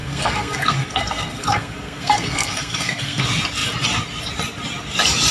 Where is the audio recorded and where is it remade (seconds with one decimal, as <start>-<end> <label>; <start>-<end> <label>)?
0.0-3.2 remade; 3.2-5.3 recorded